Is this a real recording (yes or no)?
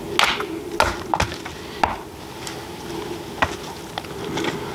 yes